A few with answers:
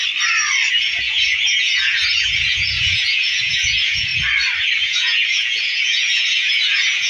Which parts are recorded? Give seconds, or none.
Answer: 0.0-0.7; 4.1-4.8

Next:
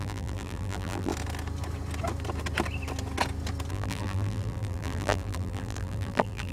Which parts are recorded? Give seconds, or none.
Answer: 1.1-3.7